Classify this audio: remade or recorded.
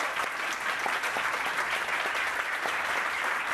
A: recorded